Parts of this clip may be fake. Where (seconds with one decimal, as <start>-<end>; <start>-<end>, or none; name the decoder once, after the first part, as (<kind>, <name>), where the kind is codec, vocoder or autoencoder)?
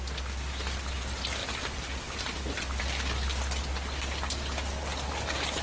1.4-2.8 (vocoder, BigVGAN v2)